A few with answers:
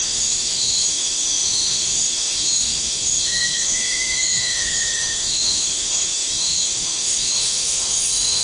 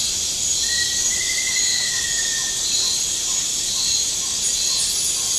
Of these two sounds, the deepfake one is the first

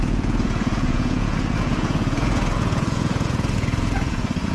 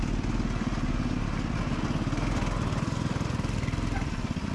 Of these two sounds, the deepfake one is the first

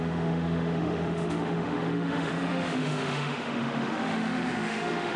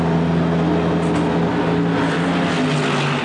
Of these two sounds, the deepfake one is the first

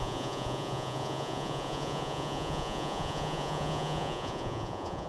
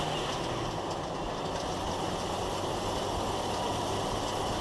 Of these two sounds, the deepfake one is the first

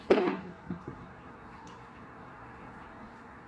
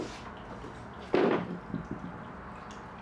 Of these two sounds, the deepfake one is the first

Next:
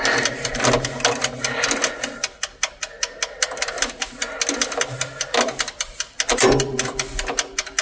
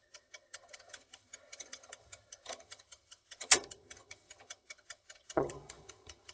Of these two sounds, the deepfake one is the second